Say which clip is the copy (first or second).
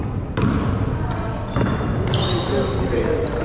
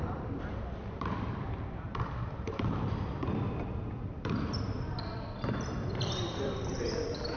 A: second